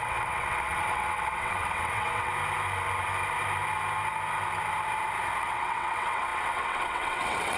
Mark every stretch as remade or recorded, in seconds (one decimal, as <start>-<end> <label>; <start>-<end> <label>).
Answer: 0.0-2.3 remade; 2.3-5.4 recorded; 5.4-7.6 remade